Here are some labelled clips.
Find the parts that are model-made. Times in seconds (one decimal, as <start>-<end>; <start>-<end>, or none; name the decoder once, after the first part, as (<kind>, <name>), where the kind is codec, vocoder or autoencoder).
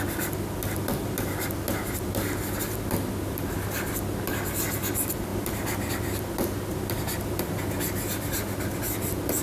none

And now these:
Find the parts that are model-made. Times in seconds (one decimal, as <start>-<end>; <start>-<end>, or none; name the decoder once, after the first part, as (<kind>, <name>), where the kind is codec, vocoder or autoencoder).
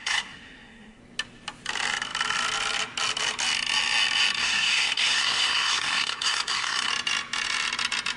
0.0-1.0 (codec, SNAC); 4.4-6.9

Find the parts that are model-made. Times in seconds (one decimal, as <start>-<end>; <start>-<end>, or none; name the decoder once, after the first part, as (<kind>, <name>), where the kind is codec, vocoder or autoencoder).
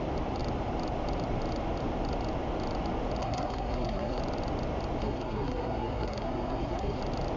3.2-4.2 (codec, SNAC); 5.0-7.0